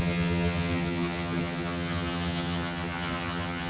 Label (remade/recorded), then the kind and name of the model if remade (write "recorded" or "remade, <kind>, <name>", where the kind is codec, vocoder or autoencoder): remade, vocoder, HiFi-GAN